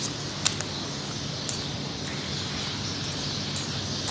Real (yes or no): yes